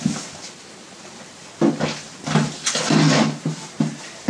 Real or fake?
real